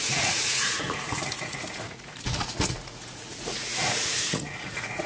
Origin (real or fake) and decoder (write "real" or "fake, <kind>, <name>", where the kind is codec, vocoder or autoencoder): fake, vocoder, Vocos